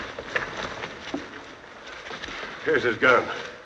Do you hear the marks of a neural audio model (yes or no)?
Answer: no